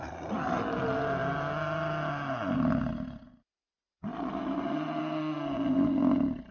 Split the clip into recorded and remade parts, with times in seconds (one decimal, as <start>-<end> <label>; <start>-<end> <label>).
0.0-6.5 recorded

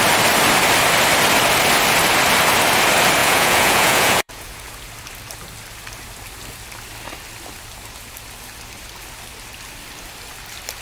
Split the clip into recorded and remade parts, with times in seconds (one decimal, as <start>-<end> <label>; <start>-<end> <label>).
0.0-3.2 recorded; 3.2-4.7 remade; 4.7-10.8 recorded

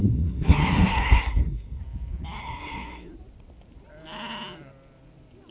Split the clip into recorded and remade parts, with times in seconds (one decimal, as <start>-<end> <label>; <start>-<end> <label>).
0.0-1.8 remade; 1.8-2.4 recorded; 2.4-3.1 remade; 3.1-5.5 recorded

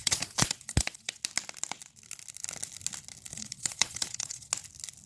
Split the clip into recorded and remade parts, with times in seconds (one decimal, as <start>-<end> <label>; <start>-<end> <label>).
0.0-1.2 remade; 1.2-3.3 recorded; 3.3-4.5 remade; 4.5-5.1 recorded

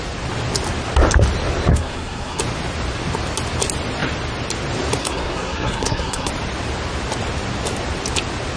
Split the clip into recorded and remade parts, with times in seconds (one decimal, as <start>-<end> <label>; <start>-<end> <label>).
0.0-1.7 recorded; 1.7-2.4 remade; 2.4-5.0 recorded; 5.0-6.3 remade; 6.3-8.6 recorded

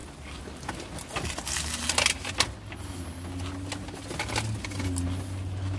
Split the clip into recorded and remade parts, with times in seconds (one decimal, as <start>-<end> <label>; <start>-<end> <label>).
0.0-5.8 recorded